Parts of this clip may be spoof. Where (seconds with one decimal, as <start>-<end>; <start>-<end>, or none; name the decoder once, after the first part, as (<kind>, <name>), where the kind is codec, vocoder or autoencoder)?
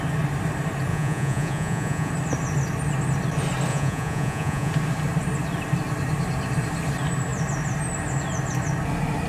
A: 0.9-2.1 (vocoder, Vocos); 3.7-4.7